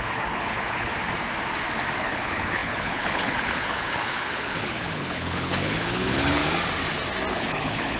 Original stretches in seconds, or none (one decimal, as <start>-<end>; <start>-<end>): 0.9-2.0; 6.4-7.3